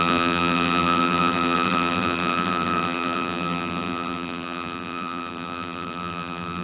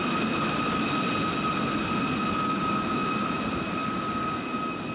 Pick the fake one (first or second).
first